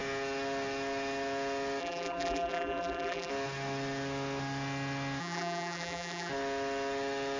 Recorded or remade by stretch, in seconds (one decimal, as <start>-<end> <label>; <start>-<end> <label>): 0.0-1.8 recorded; 1.8-3.3 remade; 3.3-5.2 recorded; 5.2-6.3 remade; 6.3-7.4 recorded